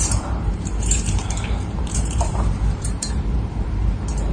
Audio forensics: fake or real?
fake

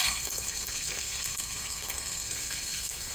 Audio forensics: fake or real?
fake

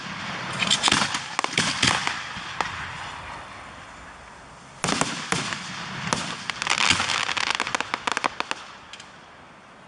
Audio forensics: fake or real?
real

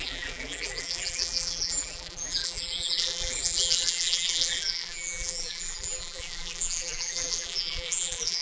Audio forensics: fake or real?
fake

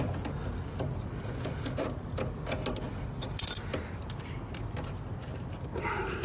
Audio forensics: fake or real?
real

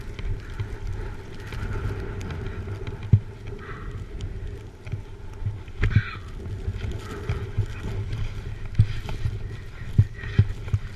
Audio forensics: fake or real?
real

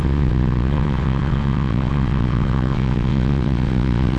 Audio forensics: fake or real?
fake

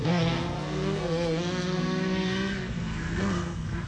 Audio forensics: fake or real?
fake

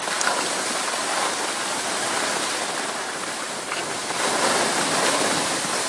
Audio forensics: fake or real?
real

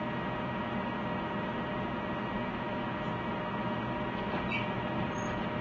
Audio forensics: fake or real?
real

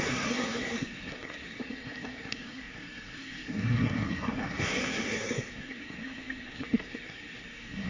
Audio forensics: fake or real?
fake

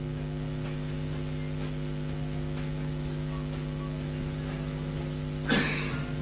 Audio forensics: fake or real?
real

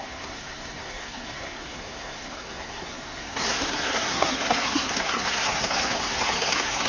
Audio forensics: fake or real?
fake